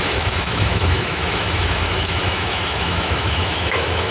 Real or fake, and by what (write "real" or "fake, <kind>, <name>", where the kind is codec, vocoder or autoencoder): fake, autoencoder, DAC-VAE